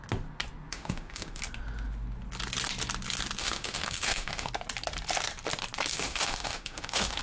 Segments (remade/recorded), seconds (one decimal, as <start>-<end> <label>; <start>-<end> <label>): 0.0-0.7 recorded; 0.7-1.4 remade; 1.4-3.4 recorded; 3.4-4.5 remade; 4.5-5.9 recorded; 5.9-7.2 remade